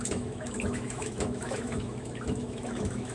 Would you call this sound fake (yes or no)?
yes